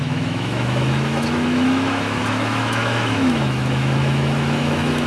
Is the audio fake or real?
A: fake